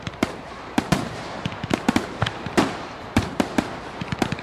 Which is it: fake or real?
fake